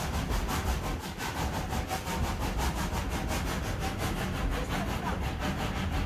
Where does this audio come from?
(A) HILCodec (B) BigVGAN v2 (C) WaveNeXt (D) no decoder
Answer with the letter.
D